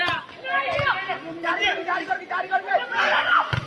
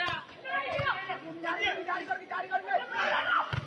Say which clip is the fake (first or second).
second